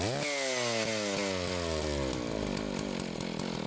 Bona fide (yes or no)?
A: yes